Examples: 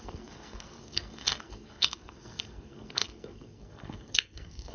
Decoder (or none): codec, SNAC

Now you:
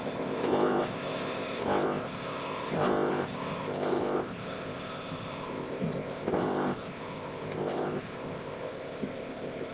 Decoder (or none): codec, ZipCodec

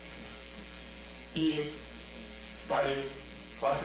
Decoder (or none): codec, SNAC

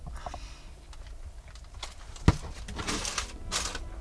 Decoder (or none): none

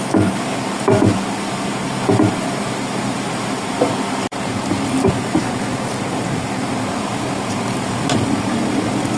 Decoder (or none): vocoder, BigVGAN v2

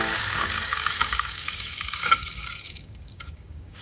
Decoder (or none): codec, DAC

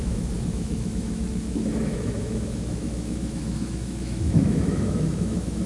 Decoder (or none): autoencoder, DAC-VAE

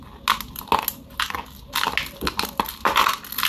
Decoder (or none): none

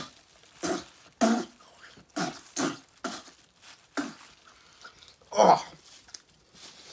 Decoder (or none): none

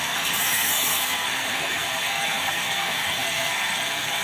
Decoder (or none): codec, SNAC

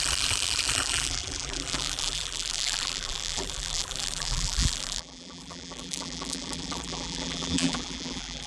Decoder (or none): vocoder, BigVGAN v2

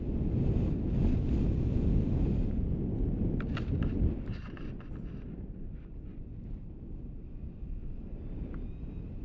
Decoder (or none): none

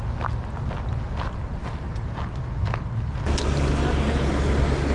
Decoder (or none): none